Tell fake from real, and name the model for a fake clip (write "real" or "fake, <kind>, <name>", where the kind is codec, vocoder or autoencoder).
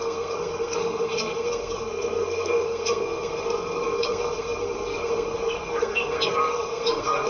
fake, codec, SNAC